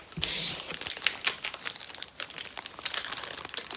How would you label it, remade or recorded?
recorded